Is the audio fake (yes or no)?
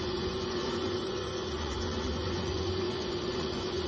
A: yes